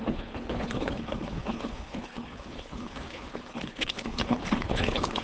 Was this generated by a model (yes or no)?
yes